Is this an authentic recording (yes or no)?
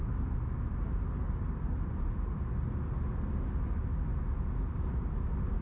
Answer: yes